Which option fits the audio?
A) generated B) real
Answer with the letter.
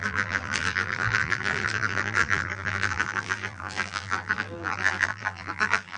A